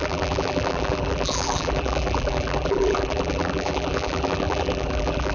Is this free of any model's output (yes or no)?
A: no